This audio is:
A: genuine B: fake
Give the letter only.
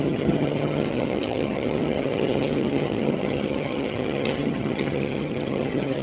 B